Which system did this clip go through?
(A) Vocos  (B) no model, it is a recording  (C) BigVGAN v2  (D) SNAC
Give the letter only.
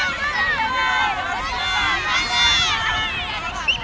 B